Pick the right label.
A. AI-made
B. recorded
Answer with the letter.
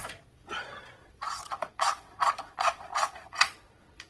A